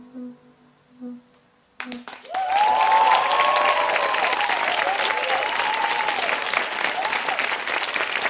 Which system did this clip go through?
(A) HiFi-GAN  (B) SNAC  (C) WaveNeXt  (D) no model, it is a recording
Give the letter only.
D